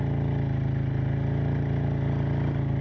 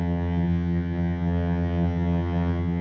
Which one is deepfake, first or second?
second